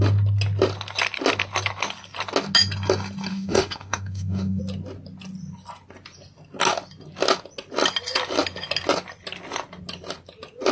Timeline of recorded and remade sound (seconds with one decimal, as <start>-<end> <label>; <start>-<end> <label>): 0.0-3.3 recorded; 3.3-4.6 remade; 4.6-10.7 recorded